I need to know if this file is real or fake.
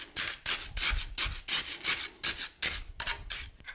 real